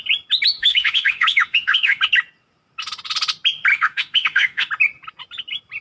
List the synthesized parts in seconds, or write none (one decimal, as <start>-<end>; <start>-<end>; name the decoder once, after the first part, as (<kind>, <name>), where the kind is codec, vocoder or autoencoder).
0.6-2.0 (autoencoder, DAC-VAE); 3.7-4.7